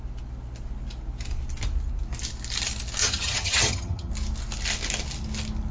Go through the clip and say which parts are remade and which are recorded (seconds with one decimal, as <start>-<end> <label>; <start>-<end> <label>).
0.0-3.0 recorded; 3.0-4.1 remade; 4.1-5.7 recorded